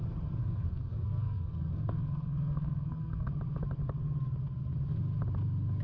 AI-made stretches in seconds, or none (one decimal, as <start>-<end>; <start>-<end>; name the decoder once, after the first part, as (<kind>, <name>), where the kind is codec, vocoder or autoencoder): 0.4-3.3 (codec, SNAC)